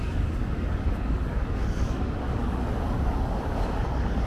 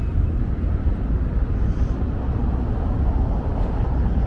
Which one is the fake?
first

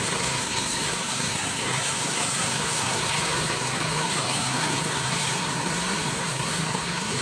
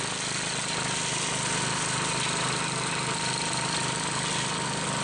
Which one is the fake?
first